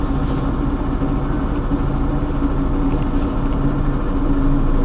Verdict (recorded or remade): recorded